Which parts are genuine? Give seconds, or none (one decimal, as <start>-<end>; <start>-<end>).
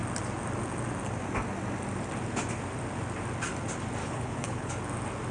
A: 0.0-4.0; 4.7-5.3